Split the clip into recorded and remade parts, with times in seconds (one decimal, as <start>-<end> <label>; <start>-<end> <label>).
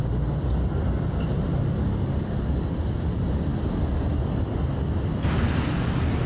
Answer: 0.0-6.3 recorded